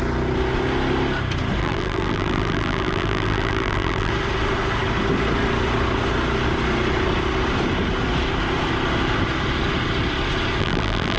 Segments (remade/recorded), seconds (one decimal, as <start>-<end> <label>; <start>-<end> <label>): 0.0-1.6 recorded; 1.6-4.1 remade; 4.1-10.6 recorded; 10.6-11.2 remade